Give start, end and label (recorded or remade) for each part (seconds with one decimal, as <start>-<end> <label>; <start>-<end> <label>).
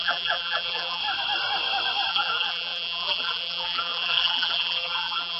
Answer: 0.0-1.0 remade; 1.0-2.1 recorded; 2.1-5.4 remade